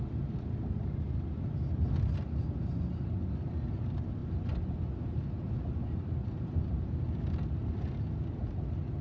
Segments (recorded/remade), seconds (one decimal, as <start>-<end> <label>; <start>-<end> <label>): 0.0-9.0 recorded